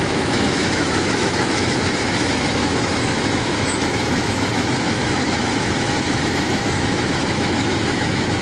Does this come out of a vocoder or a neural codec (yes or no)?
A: yes